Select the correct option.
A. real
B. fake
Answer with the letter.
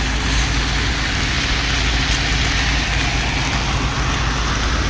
A